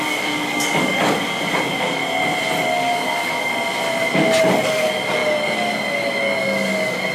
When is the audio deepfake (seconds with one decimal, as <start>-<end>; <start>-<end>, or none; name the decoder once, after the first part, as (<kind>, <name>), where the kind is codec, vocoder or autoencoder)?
0.0-2.0 (codec, DAC); 2.7-3.5; 4.4-7.1